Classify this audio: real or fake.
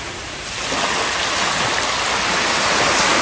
real